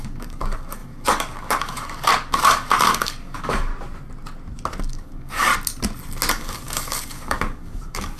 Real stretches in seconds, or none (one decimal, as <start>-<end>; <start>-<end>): 3.7-4.8; 5.5-6.3